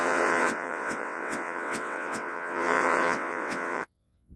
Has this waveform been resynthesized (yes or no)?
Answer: yes